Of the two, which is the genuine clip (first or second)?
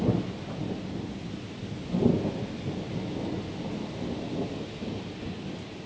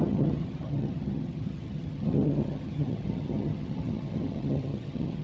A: first